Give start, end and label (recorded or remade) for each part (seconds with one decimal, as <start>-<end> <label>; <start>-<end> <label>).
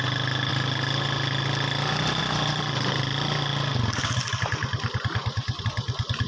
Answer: 0.0-6.3 recorded